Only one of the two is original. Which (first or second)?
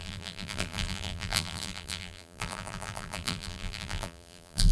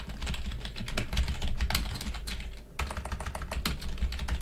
second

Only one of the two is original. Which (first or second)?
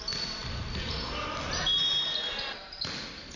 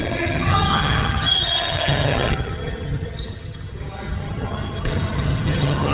first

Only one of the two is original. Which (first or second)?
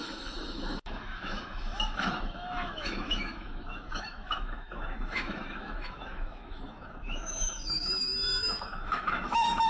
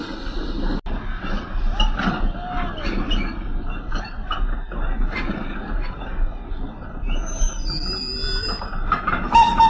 second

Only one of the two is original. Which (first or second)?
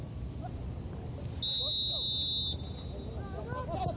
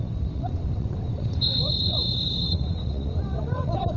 first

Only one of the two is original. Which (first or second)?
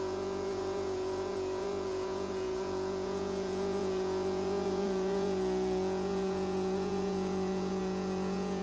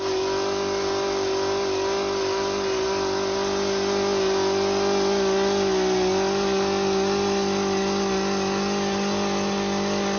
second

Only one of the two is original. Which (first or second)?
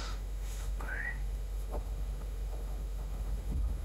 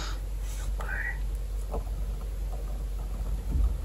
second